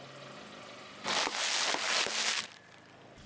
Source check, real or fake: real